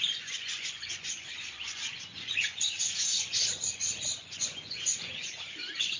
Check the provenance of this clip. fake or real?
fake